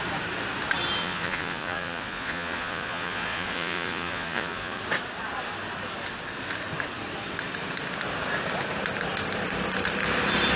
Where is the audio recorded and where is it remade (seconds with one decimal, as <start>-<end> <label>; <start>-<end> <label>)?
0.0-1.0 recorded; 1.0-4.8 remade; 4.8-10.6 recorded